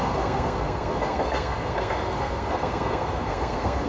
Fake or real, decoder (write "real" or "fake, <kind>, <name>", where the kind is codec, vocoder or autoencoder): fake, codec, SNAC